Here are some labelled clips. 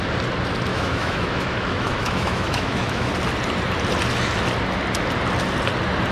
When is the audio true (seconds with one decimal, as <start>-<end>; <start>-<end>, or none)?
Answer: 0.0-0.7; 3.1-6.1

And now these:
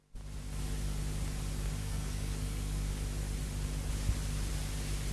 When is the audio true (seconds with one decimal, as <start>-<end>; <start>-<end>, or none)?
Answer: 0.0-1.8; 2.9-5.1

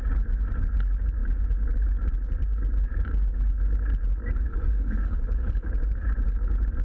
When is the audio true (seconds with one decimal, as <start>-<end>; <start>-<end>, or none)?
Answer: 0.0-4.5; 5.7-6.8

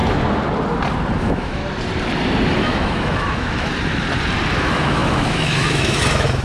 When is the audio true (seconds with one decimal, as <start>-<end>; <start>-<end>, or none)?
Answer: 0.0-1.2; 1.6-2.6; 3.7-4.6